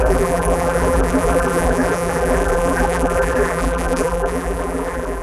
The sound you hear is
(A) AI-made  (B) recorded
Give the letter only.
A